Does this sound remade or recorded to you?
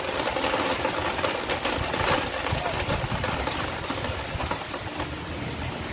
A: recorded